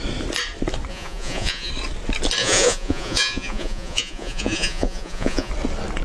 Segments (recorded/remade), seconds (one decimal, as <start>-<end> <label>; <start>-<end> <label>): 0.0-0.9 recorded; 0.9-1.7 remade; 1.7-2.4 recorded; 2.4-5.5 remade; 5.5-6.0 recorded